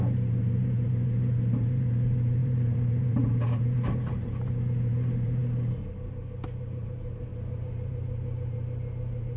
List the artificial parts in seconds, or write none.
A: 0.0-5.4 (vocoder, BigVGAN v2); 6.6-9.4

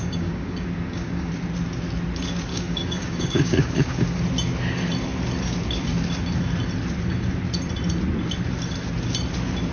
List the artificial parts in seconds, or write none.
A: 0.0-1.3 (codec, DAC); 2.5-4.2

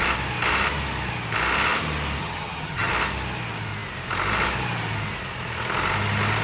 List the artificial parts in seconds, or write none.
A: 2.2-2.9 (vocoder, HiFi-GAN)

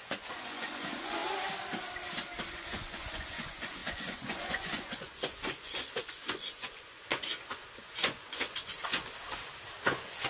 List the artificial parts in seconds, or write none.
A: 0.0-1.2 (vocoder, Vocos); 2.5-9.0; 9.8-10.3

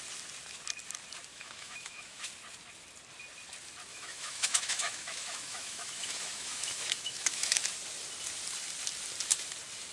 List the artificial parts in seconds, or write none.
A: 1.3-2.3 (autoencoder, DAC-VAE); 3.9-7.7